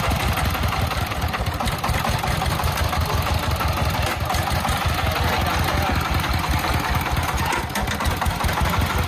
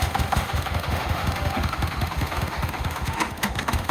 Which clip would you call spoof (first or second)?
second